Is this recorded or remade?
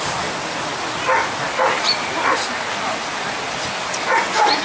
recorded